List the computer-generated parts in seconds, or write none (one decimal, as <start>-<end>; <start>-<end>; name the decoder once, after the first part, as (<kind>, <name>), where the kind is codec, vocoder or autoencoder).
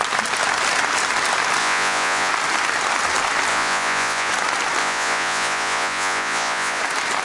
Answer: 1.6-2.3 (vocoder, Vocos); 3.5-4.3; 4.8-6.8